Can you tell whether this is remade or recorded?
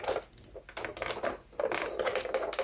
recorded